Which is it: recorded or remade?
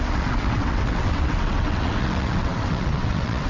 remade